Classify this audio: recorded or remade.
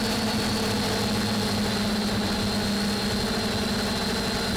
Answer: recorded